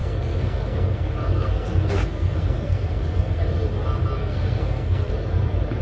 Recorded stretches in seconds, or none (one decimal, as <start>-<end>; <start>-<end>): 3.4-4.2; 5.1-5.8